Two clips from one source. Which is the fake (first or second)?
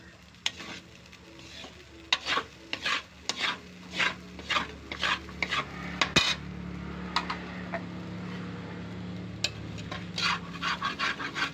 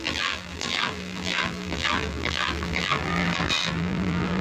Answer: second